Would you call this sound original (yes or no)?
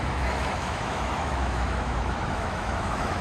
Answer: no